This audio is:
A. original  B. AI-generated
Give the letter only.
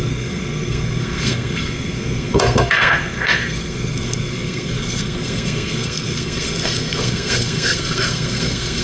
B